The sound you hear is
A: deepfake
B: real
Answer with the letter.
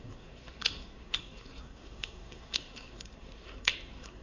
A